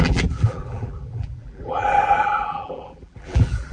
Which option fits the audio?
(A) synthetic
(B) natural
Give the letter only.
A